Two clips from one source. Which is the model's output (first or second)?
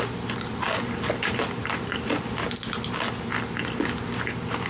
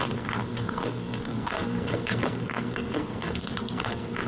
second